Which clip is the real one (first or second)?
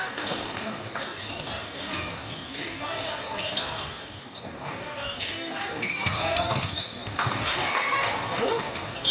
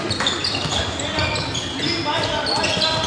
second